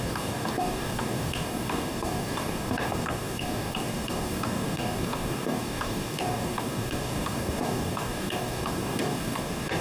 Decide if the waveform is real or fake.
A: fake